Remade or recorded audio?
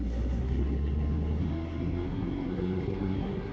remade